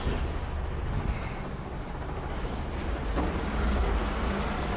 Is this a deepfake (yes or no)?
no